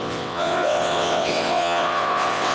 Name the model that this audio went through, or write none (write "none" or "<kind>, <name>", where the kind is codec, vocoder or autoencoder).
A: vocoder, WaveNeXt